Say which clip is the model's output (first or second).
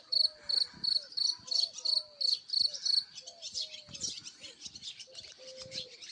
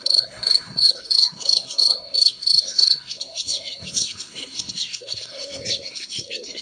second